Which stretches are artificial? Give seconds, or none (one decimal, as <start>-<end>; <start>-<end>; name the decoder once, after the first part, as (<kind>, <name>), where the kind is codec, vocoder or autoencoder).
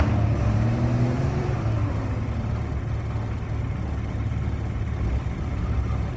0.0-1.8 (vocoder, BigVGAN v2); 5.5-6.2